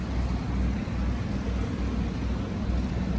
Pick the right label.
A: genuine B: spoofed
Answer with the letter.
A